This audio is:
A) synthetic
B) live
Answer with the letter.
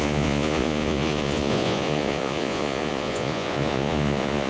A